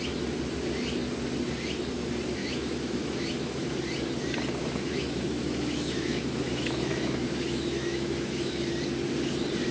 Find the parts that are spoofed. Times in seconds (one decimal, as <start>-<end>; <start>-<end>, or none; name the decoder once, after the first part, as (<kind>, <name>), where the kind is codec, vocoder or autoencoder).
2.4-3.7 (autoencoder, DAC-VAE); 4.6-8.7